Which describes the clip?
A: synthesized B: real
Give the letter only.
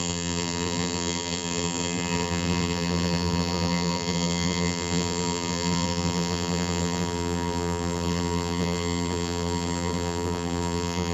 A